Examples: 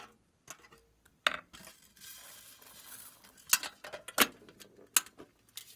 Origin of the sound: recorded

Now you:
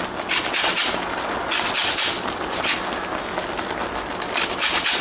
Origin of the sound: recorded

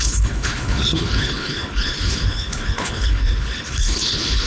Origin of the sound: remade